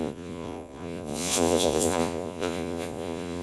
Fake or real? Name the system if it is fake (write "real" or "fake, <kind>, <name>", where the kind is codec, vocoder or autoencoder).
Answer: fake, vocoder, Vocos